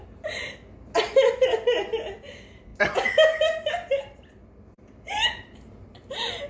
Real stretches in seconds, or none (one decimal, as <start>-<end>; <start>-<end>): 0.0-6.5